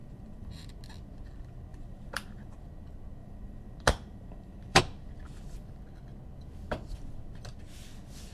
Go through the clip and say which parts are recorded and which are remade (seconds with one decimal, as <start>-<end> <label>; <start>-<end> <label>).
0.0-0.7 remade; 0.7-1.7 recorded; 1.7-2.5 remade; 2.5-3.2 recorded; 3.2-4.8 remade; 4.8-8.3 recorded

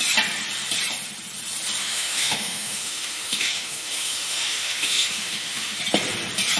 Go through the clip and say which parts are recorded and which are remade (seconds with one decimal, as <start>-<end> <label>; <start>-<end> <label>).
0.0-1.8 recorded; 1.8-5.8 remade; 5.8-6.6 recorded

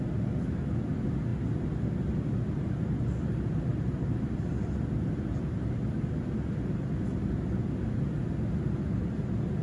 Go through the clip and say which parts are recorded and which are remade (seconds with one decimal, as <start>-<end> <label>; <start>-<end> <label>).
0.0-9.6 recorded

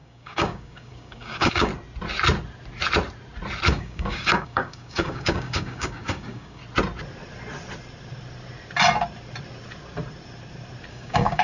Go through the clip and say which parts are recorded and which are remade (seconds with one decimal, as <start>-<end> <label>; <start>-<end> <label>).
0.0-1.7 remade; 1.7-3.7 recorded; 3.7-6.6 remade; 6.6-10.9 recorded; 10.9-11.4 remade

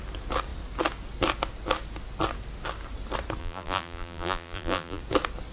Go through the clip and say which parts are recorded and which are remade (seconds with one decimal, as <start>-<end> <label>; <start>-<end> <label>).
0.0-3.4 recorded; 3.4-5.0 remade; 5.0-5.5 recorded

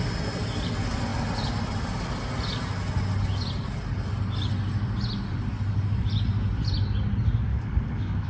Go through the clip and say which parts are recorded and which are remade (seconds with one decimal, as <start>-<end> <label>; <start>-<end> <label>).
0.0-7.5 recorded; 7.5-8.3 remade